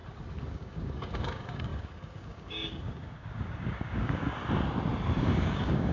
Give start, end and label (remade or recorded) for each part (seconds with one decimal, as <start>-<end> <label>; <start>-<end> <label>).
0.0-0.5 recorded; 0.5-4.3 remade; 4.3-5.2 recorded; 5.2-5.9 remade